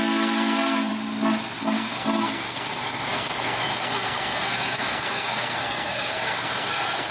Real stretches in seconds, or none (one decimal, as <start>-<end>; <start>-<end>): 0.9-1.6